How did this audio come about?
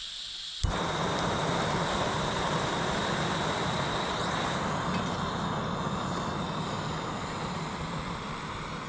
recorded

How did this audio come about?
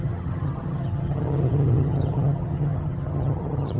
remade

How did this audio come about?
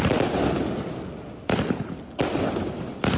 recorded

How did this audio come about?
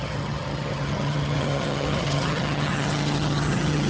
remade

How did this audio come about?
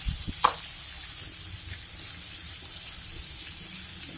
recorded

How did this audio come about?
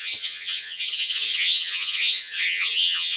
remade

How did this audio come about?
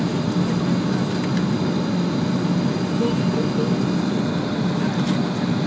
recorded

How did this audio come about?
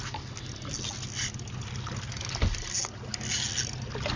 recorded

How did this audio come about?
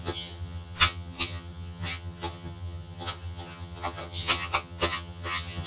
remade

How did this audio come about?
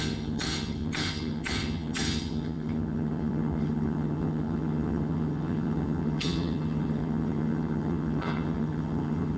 remade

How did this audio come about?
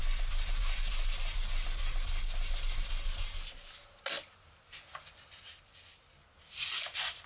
recorded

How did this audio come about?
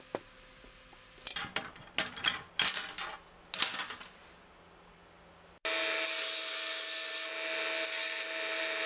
recorded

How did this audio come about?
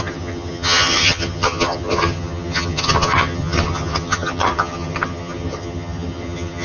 remade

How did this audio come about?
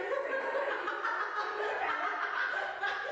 recorded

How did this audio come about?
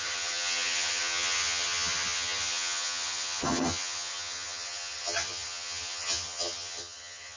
remade